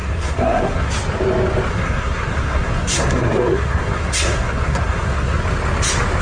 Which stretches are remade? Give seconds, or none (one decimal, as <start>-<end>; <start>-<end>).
0.0-0.9; 1.7-5.4